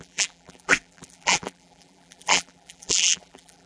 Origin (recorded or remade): remade